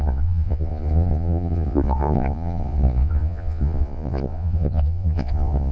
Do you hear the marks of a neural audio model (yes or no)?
yes